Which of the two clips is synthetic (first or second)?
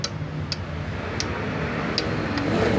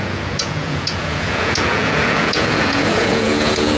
second